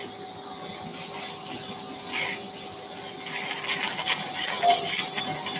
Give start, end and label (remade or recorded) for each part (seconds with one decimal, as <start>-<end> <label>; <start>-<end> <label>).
0.0-5.6 recorded